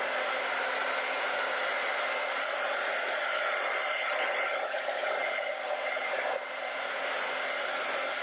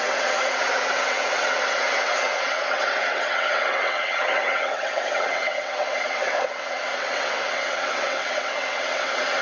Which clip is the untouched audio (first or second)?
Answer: first